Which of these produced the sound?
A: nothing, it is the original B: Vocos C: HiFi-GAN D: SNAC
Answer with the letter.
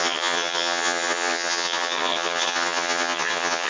C